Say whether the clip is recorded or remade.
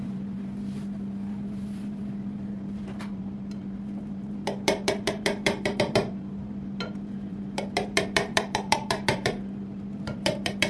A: remade